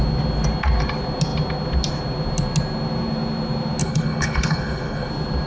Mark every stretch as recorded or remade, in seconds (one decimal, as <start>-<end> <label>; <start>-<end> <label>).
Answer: 0.0-3.8 recorded; 3.8-5.1 remade; 5.1-5.5 recorded